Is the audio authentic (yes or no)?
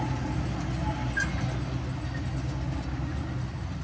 yes